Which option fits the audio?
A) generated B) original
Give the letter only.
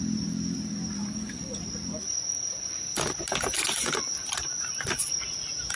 B